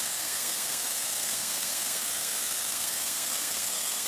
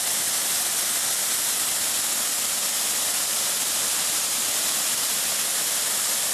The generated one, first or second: first